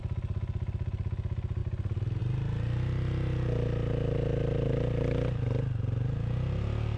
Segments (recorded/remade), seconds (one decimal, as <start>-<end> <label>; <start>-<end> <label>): 0.0-7.0 recorded